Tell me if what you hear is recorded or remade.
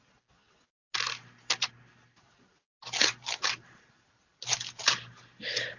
recorded